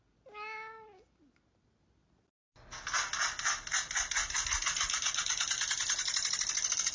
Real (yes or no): yes